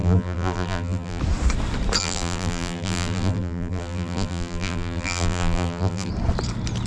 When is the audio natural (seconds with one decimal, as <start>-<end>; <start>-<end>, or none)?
1.2-2.0; 6.1-6.9

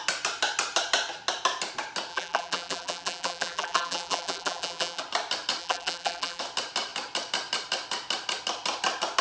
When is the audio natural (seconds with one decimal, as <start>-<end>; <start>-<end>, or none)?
0.0-2.1; 5.0-5.6; 6.4-9.2

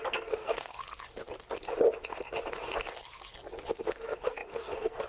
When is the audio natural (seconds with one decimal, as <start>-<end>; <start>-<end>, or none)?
0.8-3.9